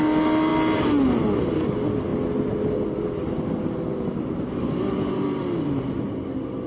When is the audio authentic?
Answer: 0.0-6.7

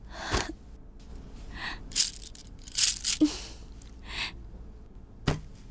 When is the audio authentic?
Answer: 0.0-1.1; 2.0-2.4; 2.9-5.7

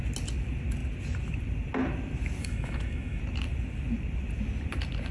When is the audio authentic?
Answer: 0.0-2.4; 3.2-5.1

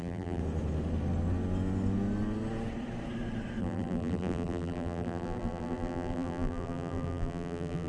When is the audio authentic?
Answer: 0.4-3.6